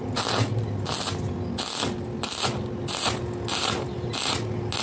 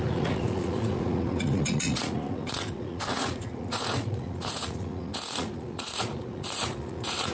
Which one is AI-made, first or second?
second